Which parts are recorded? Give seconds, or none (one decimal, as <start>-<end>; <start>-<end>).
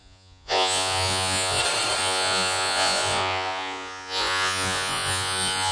1.6-2.0